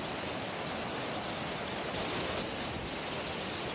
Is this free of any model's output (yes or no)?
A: yes